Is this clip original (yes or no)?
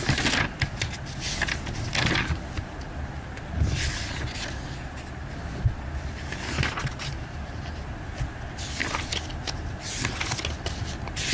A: yes